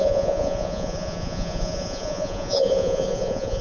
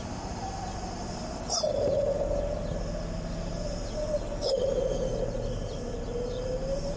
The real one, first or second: second